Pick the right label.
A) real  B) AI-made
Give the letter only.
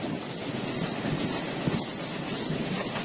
A